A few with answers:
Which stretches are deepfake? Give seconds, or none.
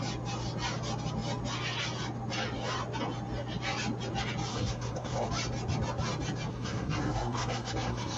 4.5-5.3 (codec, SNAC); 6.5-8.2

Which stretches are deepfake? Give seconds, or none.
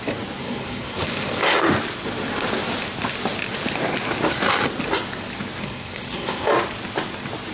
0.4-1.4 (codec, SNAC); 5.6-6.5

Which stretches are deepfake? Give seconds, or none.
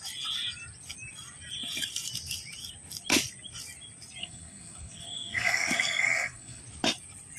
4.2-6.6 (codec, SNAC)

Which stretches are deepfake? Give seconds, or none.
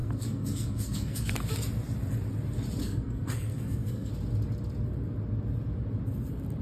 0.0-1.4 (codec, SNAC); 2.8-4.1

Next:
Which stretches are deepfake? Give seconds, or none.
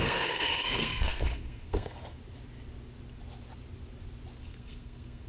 0.0-2.2 (codec, SNAC); 4.4-5.3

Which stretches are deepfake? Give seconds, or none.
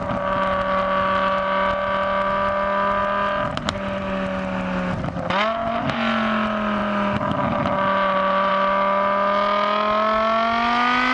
none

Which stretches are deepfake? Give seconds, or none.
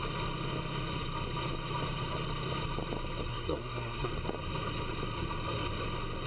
3.3-4.1 (codec, SNAC)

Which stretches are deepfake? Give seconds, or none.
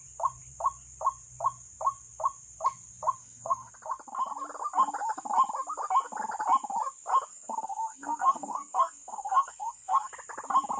3.2-3.7 (codec, SNAC); 7.3-10.1